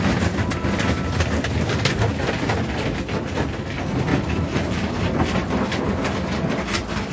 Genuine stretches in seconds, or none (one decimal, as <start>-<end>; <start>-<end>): 0.0-4.1; 4.9-7.1